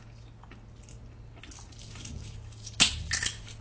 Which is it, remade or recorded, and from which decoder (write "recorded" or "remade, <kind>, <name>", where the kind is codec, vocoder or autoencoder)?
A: recorded